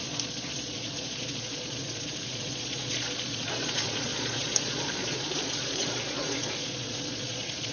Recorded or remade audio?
remade